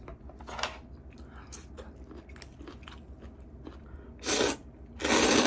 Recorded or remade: recorded